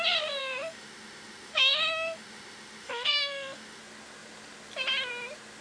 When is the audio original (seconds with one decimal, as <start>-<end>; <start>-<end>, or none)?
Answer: 0.0-0.4; 3.8-5.6